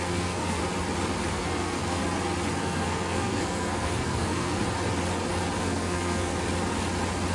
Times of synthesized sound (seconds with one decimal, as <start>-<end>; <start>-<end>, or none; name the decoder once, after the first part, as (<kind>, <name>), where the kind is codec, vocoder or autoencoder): 0.0-0.6 (codec, SNAC); 1.3-2.0; 2.6-4.6; 5.6-6.3